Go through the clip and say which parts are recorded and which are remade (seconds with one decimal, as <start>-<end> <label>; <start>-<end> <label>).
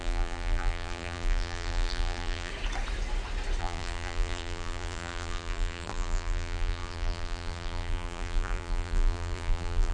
0.0-2.5 remade; 2.5-3.6 recorded; 3.6-9.9 remade